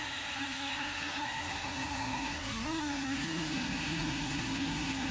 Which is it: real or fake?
fake